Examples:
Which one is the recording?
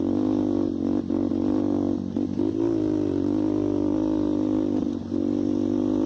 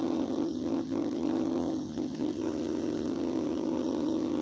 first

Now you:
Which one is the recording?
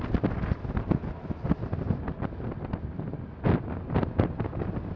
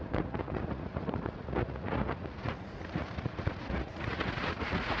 first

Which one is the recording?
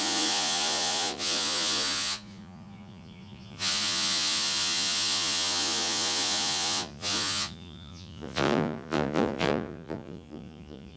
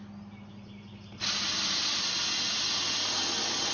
second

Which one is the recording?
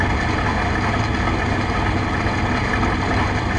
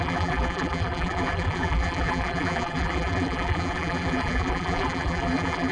first